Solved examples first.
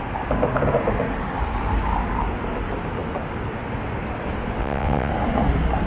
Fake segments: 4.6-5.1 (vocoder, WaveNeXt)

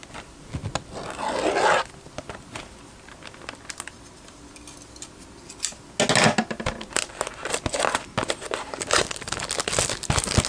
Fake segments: none